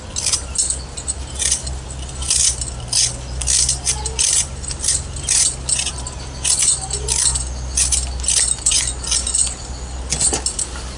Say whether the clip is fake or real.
real